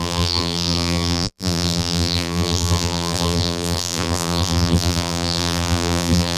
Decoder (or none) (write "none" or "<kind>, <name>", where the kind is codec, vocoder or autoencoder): vocoder, BigVGAN v2